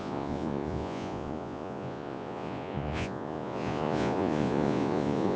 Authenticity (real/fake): fake